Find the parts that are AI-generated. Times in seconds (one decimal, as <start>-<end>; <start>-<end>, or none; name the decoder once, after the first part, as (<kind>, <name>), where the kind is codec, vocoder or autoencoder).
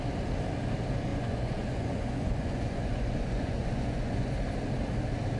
1.1-4.3 (vocoder, Vocos)